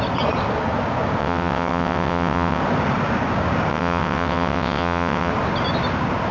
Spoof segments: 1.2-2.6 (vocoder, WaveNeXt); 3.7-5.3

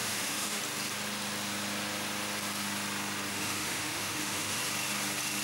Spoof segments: 0.0-0.6 (autoencoder, DAC-VAE); 3.3-4.6

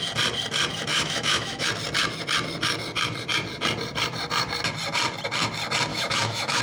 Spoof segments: 0.9-1.7 (autoencoder, DAC-VAE); 5.9-6.6

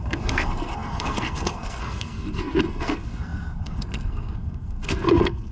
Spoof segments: 0.0-5.5 (codec, SNAC)

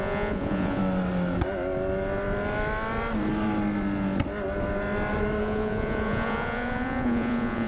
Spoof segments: 0.0-0.8 (vocoder, Vocos); 5.4-7.7

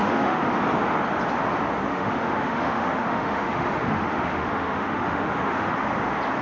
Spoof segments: 0.0-0.6 (autoencoder, DAC-VAE); 1.9-5.7

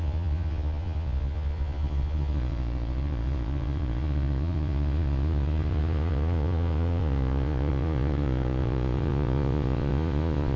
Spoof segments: 0.0-10.6 (vocoder, Vocos)

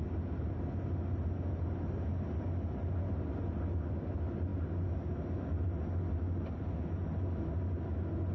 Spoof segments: none